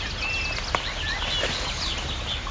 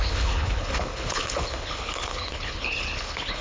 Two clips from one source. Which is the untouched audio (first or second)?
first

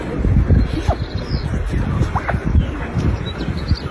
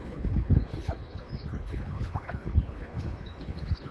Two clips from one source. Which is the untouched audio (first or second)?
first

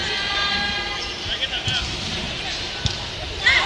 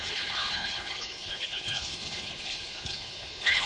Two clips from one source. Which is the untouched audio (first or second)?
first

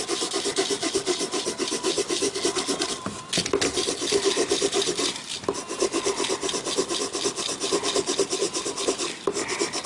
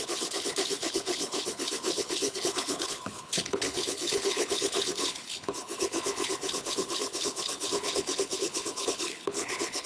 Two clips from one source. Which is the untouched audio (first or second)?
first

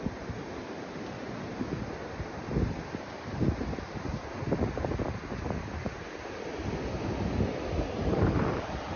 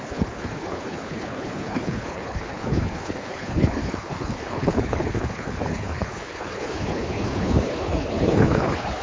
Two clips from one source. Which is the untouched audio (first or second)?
first